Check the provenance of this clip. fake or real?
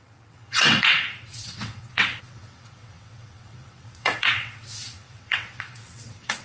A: fake